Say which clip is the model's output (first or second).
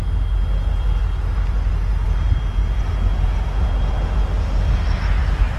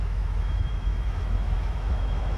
second